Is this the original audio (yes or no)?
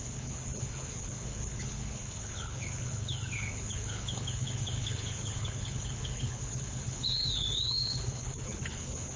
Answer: no